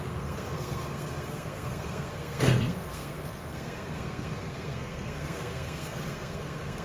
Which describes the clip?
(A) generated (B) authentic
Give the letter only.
A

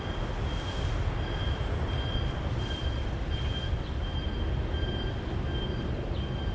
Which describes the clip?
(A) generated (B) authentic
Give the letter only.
B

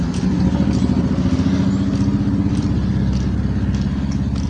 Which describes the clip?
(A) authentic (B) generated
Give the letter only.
A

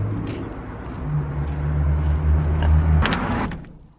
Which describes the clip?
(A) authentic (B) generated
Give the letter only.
A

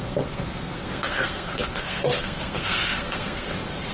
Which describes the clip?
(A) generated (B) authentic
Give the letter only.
A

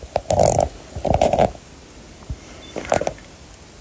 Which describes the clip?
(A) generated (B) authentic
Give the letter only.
B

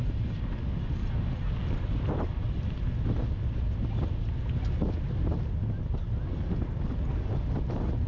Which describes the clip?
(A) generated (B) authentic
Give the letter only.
B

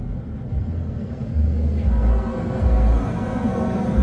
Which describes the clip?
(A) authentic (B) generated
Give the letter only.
B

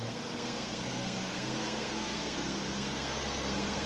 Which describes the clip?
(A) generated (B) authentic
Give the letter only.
A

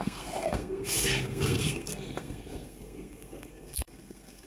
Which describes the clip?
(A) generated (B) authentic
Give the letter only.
A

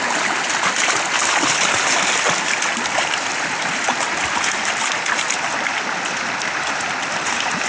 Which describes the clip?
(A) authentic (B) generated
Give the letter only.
A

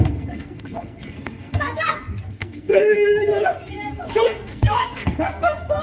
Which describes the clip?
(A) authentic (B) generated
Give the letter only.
B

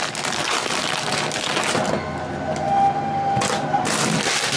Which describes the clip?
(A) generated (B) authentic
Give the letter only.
B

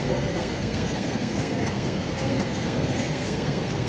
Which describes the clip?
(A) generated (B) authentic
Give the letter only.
A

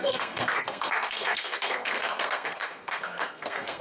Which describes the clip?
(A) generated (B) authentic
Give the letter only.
A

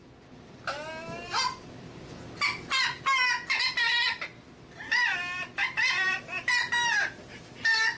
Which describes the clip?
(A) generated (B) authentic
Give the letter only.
B